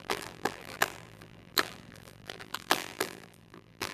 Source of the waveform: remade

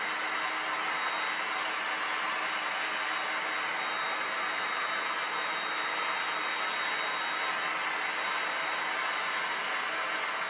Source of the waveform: recorded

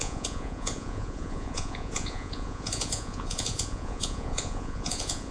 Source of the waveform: remade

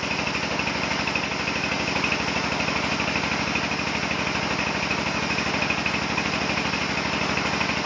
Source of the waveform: recorded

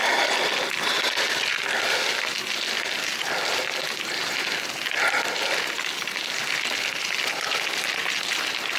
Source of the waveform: recorded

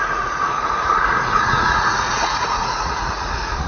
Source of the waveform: remade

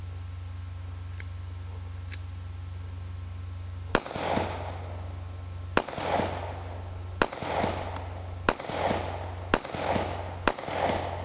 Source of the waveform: recorded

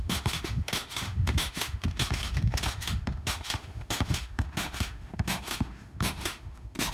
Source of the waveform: remade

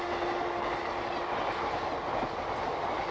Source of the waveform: recorded